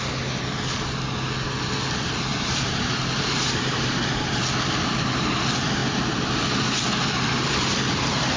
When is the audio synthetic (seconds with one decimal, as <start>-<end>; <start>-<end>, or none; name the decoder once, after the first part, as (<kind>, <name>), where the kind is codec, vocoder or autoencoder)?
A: 2.3-4.4 (vocoder, BigVGAN v2)